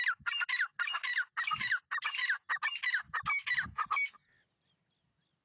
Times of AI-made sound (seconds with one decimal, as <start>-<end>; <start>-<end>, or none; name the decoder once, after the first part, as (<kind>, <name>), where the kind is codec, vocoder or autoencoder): none